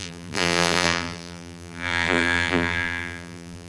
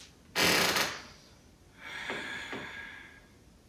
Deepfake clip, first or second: first